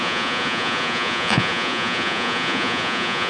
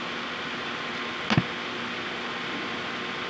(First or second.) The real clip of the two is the second